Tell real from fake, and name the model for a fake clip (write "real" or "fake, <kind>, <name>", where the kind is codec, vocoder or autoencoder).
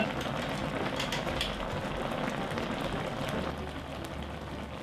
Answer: real